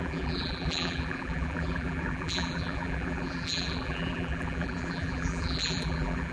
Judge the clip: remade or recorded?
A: remade